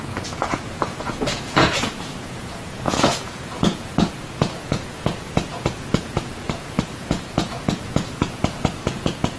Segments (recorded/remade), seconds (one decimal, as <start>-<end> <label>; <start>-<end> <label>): 0.0-9.4 remade